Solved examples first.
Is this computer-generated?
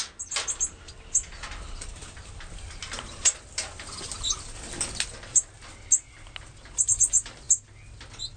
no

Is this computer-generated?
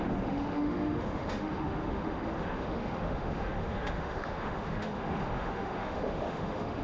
yes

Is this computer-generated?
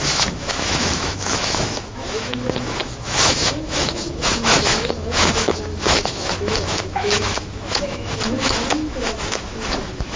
yes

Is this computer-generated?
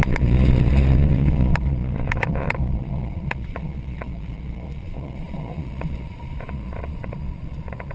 yes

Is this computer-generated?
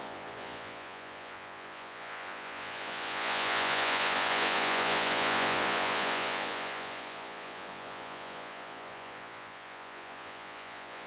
yes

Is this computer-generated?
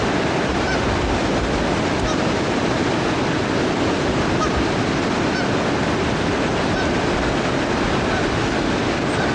no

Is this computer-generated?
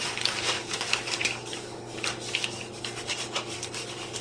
yes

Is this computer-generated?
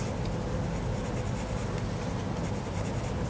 no